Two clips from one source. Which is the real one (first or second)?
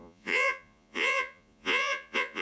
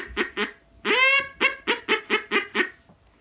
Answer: second